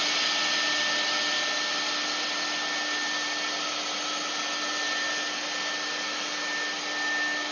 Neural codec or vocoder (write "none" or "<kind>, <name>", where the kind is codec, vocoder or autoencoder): none